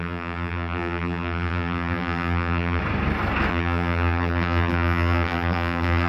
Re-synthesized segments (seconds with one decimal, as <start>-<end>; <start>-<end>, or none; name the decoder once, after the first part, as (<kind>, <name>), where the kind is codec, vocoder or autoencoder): 0.0-2.8 (vocoder, BigVGAN v2); 3.5-6.1